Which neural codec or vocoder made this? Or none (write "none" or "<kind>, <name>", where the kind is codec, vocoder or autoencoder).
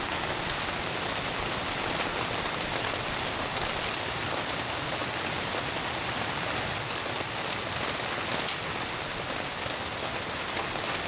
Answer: none